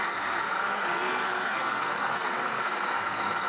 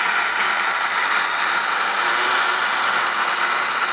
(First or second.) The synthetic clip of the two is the first